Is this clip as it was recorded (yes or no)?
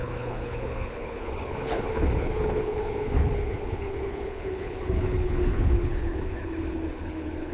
no